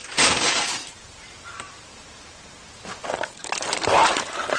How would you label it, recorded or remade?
remade